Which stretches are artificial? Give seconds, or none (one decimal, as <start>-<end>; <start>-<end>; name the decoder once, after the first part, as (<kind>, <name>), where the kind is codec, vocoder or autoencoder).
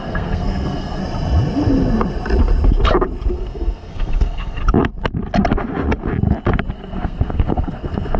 0.0-1.0 (codec, SNAC); 3.3-4.6; 6.7-8.2